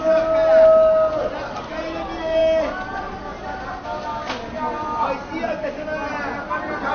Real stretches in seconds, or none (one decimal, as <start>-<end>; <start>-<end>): 0.0-6.9